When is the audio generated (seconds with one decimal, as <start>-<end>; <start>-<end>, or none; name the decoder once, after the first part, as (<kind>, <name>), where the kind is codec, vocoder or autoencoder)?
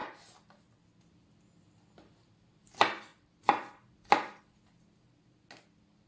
none